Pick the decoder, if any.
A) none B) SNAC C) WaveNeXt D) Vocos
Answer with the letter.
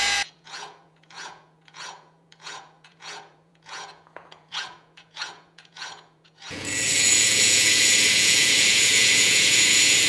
D